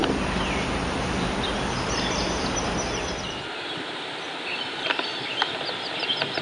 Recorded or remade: recorded